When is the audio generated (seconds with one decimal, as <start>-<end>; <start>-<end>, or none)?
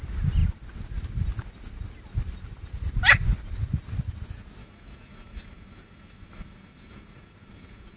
4.6-8.0